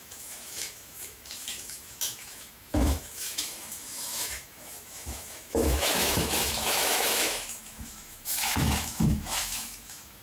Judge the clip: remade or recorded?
remade